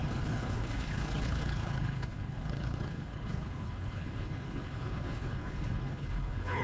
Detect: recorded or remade remade